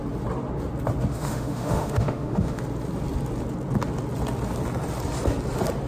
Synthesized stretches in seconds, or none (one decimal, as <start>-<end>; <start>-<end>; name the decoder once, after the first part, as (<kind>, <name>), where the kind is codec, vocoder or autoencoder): 1.1-2.6 (autoencoder, DAC-VAE)